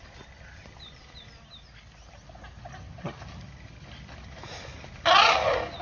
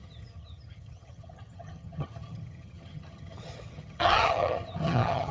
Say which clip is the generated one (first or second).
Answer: second